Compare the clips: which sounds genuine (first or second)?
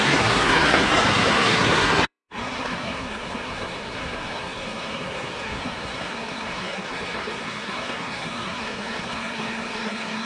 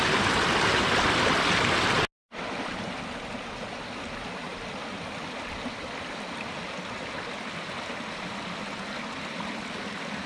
second